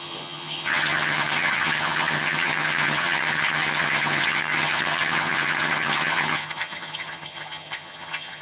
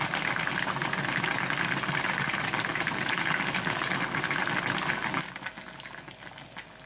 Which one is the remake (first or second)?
first